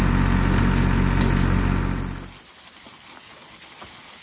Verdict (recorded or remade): recorded